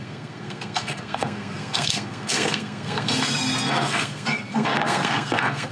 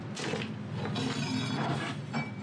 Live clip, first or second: second